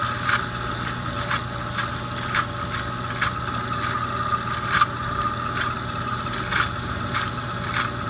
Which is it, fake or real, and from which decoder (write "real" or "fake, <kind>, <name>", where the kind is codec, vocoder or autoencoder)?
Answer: real